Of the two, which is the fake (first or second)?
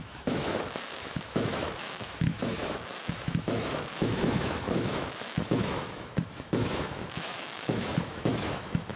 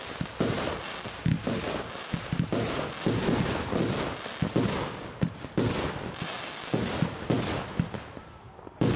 first